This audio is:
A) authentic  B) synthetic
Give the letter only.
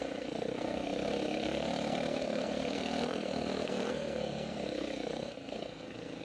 B